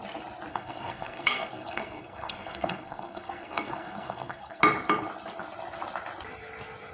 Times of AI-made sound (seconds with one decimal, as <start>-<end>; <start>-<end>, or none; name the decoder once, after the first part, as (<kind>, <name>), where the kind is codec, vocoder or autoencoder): 0.5-4.6 (codec, SNAC)